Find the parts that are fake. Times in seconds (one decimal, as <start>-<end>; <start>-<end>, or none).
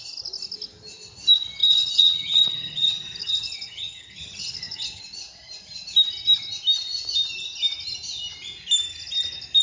1.6-5.0